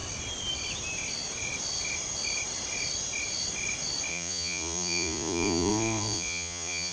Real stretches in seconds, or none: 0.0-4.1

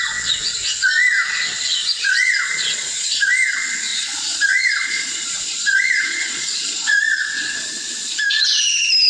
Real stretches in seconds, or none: 0.0-1.8; 3.3-3.9; 8.6-9.1

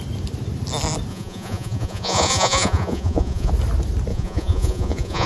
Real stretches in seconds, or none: 0.0-1.1; 3.5-4.1

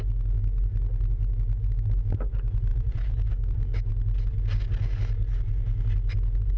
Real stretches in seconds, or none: 0.0-2.7; 3.3-6.6